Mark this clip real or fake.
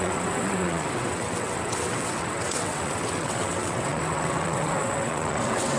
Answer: fake